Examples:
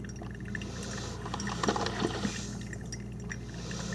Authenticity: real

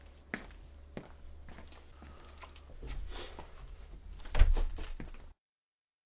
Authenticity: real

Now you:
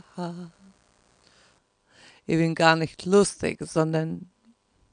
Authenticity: real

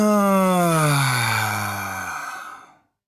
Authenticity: real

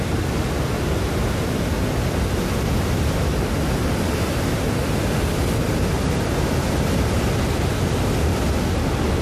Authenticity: real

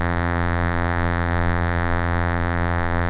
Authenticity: fake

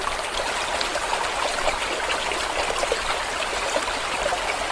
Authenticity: real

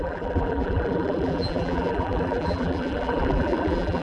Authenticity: fake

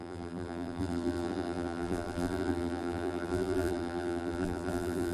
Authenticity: fake